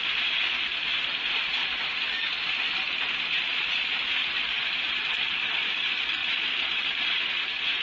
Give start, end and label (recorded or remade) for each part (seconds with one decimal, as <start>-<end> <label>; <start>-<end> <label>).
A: 0.0-6.2 recorded; 6.2-7.2 remade; 7.2-7.8 recorded